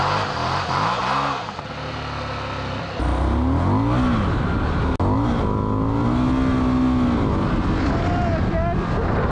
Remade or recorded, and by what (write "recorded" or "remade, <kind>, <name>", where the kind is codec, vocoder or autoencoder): recorded